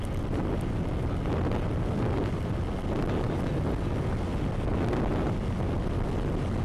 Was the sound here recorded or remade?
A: recorded